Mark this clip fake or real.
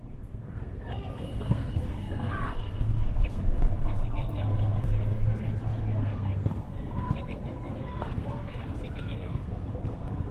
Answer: fake